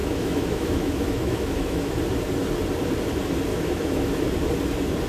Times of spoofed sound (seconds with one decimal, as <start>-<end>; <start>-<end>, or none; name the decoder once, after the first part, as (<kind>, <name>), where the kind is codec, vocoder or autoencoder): 0.0-2.0 (autoencoder, DAC-VAE); 3.5-4.2